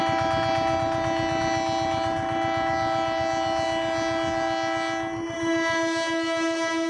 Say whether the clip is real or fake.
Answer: real